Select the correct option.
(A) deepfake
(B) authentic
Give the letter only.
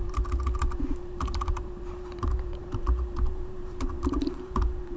A